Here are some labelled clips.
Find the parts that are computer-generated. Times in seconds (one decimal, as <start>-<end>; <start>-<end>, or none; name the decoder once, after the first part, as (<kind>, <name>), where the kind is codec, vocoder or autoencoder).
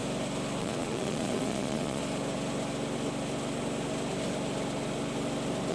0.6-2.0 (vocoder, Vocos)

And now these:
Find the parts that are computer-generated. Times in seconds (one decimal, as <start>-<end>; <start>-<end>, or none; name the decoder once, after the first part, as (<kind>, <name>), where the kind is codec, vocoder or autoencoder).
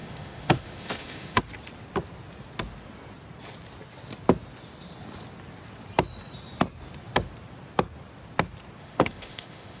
0.0-1.4 (autoencoder, DAC-VAE); 8.8-9.8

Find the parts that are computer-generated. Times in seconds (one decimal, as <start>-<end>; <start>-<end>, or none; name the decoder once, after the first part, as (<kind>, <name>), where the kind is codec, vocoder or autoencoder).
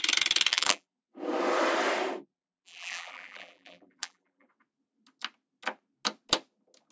0.5-1.0 (vocoder, BigVGAN v2); 2.3-4.5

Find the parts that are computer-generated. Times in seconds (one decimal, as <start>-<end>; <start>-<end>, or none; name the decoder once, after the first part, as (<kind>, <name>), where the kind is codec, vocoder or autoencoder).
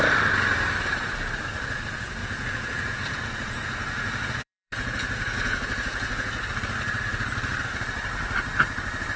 2.2-6.5 (vocoder, Vocos)